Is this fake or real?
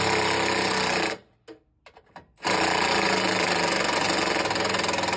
real